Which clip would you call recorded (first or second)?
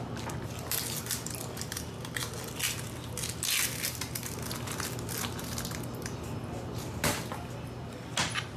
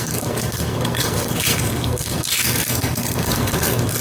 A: first